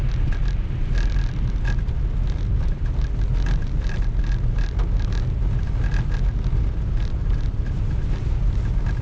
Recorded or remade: recorded